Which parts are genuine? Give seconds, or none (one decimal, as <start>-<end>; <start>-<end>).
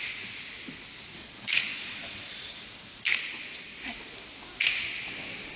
0.0-1.2; 2.5-3.1; 3.8-5.6